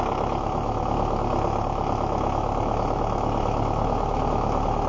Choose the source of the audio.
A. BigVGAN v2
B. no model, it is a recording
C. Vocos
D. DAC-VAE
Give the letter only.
D